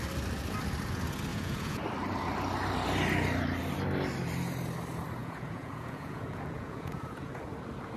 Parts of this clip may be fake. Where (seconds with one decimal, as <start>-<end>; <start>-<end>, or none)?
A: 1.3-1.8; 5.2-7.5